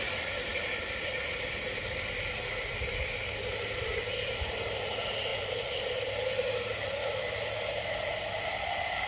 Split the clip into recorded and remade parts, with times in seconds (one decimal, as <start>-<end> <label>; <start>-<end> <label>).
0.0-9.1 recorded